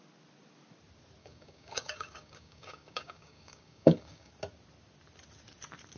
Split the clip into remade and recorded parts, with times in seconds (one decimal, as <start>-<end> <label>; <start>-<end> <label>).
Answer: 0.0-1.2 recorded; 1.2-4.3 remade; 4.3-6.0 recorded